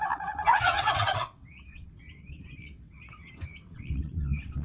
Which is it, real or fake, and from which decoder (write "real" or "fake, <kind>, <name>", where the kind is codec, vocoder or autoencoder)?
fake, vocoder, WaveNeXt